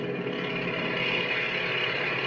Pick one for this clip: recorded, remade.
recorded